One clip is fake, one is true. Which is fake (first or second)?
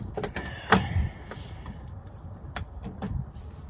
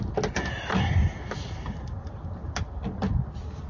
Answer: first